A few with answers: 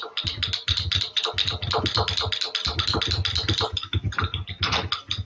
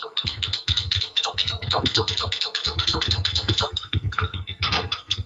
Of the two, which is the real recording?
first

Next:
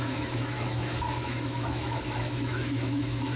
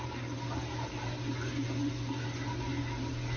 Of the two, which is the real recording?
second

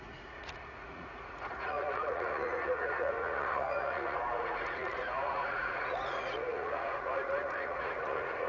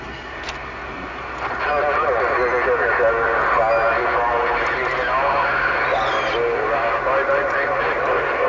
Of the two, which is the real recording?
second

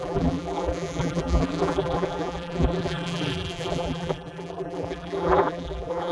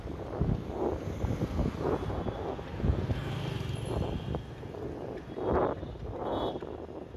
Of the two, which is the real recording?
second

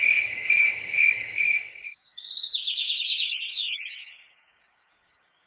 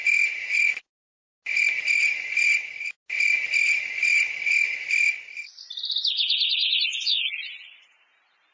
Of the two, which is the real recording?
second